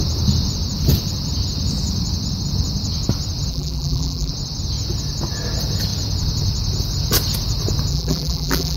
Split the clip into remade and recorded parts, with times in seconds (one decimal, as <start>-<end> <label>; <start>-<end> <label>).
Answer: 0.0-3.5 recorded; 3.5-4.3 remade; 4.3-7.9 recorded; 7.9-8.8 remade